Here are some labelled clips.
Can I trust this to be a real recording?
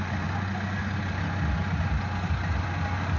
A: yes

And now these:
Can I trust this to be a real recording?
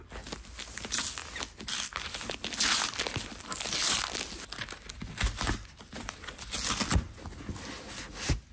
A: yes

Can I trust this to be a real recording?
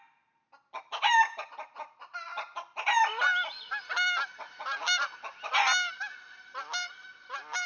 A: yes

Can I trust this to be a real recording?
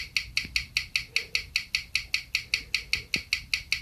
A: yes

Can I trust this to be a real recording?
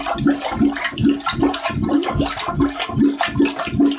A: yes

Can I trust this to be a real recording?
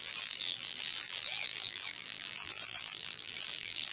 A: no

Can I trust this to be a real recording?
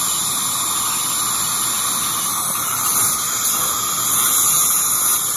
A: yes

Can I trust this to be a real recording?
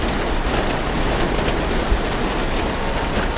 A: yes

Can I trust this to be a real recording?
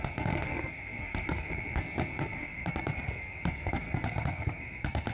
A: no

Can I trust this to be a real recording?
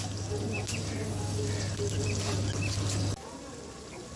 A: yes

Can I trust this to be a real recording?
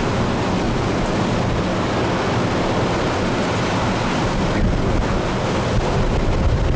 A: yes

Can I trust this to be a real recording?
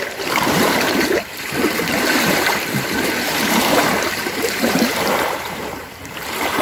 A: no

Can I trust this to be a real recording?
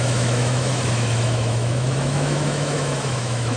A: no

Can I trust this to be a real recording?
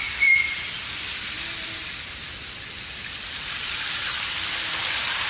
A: yes